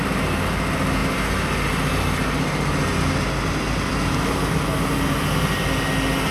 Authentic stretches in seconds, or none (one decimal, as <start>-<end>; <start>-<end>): 0.0-6.3